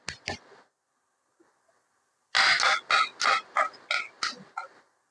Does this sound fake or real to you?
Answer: real